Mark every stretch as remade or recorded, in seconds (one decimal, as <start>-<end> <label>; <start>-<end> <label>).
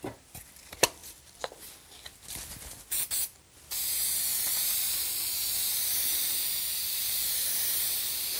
0.0-8.4 recorded